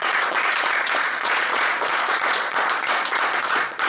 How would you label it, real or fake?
fake